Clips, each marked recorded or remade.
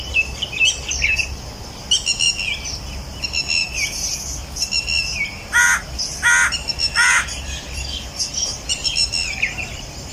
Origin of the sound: recorded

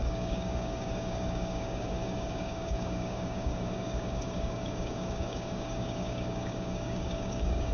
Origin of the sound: remade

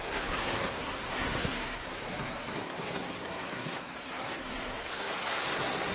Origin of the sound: remade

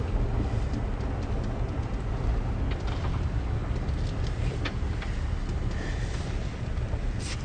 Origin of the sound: recorded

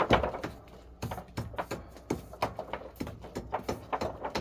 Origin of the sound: recorded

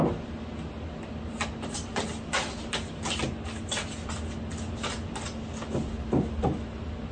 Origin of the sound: recorded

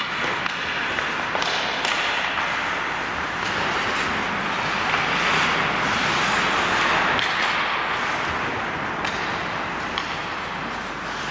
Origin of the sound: recorded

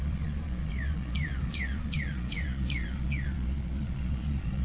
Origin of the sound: remade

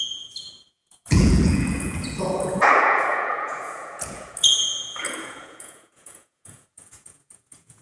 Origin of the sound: remade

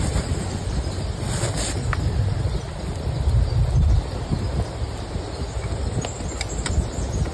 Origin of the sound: recorded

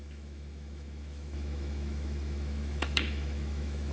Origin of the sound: remade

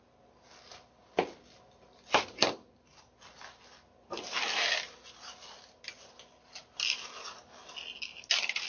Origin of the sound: recorded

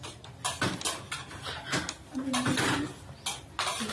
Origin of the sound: recorded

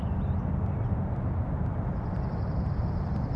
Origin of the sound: recorded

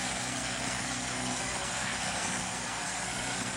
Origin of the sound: remade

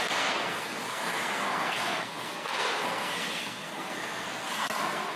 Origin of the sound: remade